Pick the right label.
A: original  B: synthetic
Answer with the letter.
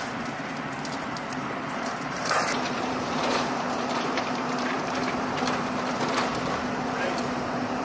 B